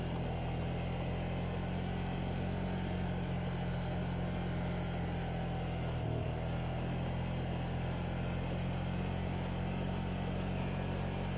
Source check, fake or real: real